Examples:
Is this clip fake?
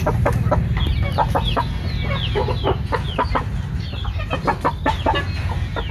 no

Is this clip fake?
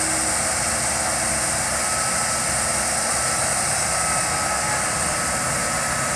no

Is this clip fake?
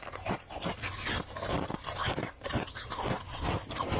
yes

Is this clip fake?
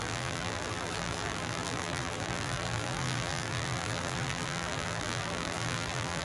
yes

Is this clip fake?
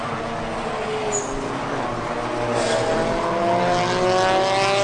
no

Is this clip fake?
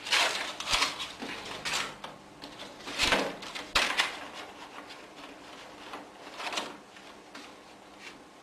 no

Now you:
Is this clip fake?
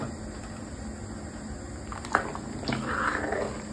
no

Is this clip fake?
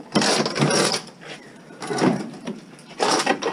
yes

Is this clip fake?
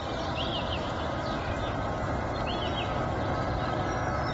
yes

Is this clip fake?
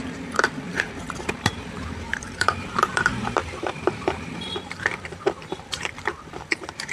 yes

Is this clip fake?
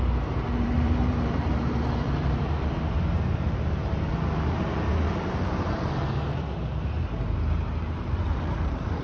yes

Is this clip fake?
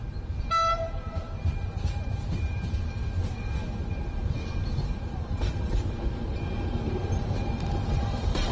yes